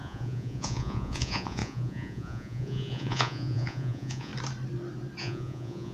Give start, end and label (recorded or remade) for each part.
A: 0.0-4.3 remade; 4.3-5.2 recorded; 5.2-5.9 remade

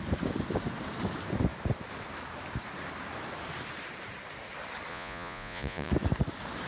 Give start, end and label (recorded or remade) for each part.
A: 0.0-4.9 recorded; 4.9-5.9 remade; 5.9-6.7 recorded